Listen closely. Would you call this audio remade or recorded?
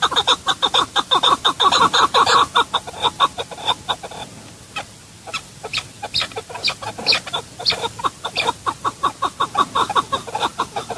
recorded